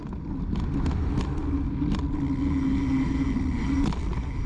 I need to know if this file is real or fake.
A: real